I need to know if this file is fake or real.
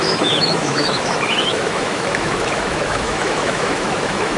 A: fake